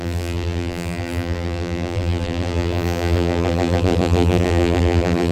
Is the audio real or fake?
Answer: fake